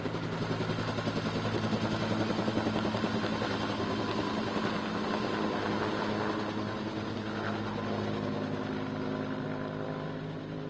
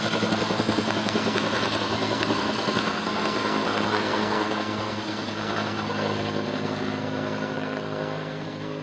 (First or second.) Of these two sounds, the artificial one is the second